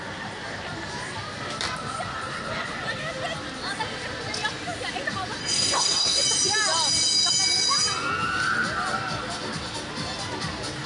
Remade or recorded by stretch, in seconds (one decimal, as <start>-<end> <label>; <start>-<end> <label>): 0.0-5.4 recorded; 5.4-6.2 remade; 6.2-10.9 recorded